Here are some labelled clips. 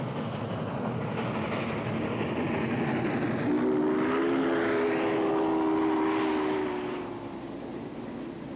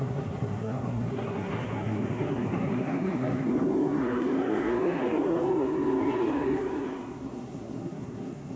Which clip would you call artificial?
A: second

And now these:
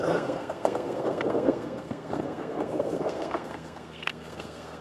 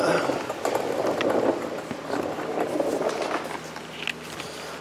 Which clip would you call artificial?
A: first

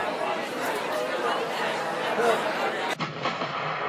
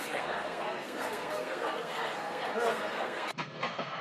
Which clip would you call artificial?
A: second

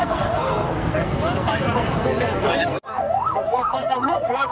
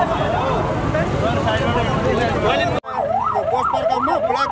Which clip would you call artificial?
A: first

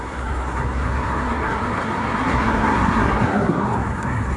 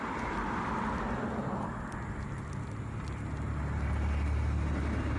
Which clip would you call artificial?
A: first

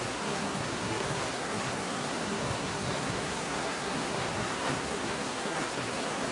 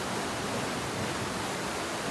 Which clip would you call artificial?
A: first